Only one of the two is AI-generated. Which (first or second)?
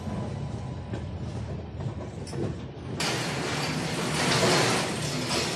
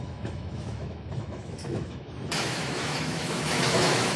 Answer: second